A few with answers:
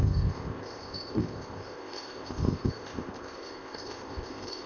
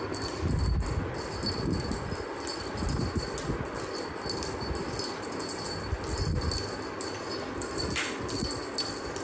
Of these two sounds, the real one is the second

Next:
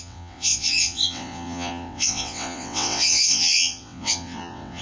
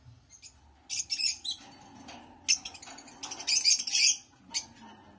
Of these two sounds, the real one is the second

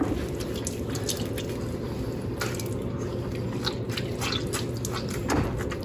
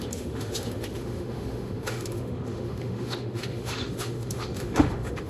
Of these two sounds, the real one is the first